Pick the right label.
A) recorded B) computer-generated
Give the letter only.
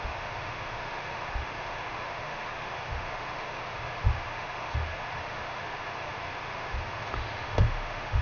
B